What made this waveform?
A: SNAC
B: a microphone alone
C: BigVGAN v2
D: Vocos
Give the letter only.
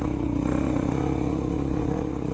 D